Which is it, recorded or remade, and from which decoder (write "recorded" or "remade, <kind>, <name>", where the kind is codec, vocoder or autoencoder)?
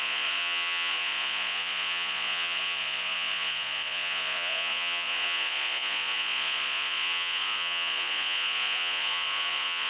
remade, vocoder, Vocos